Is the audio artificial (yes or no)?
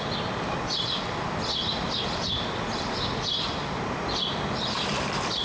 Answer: no